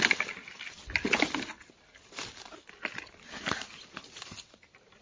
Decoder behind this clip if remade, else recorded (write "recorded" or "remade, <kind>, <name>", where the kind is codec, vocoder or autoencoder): recorded